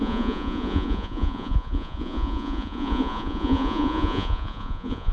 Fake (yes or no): yes